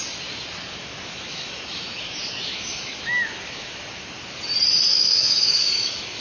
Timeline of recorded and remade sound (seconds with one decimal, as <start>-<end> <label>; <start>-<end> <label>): 0.0-0.7 recorded; 0.7-4.1 remade; 4.1-4.9 recorded; 4.9-6.2 remade